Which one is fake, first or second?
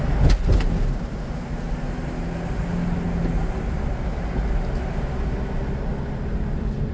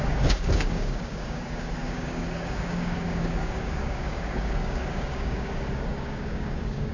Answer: second